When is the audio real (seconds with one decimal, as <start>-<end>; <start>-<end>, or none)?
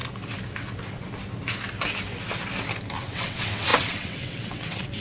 0.0-3.0